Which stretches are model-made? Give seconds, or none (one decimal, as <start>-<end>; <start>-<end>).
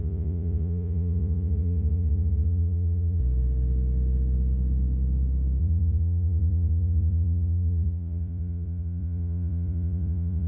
0.0-3.2; 5.6-10.5